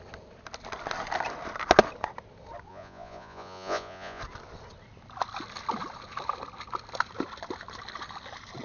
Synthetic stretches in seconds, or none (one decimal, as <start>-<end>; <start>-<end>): 2.7-4.2